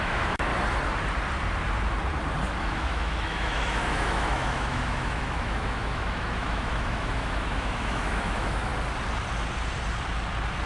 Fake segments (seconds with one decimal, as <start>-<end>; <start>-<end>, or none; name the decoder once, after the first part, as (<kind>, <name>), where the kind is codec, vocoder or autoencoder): 0.0-0.5 (autoencoder, DAC-VAE); 2.6-8.7